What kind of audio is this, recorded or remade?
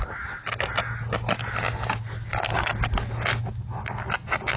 recorded